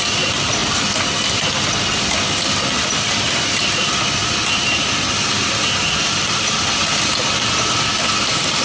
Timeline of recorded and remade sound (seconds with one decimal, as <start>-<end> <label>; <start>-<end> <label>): 0.0-8.6 recorded